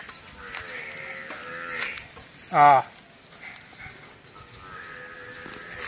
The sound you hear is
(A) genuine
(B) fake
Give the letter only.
A